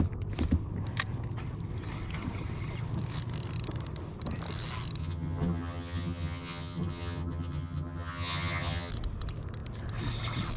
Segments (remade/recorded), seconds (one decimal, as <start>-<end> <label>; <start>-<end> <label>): 0.0-5.0 recorded; 5.0-8.9 remade; 8.9-10.6 recorded